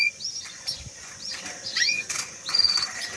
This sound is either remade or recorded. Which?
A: remade